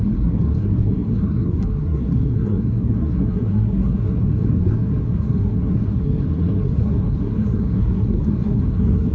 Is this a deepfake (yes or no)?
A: yes